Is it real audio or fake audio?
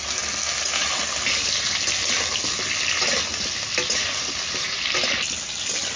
real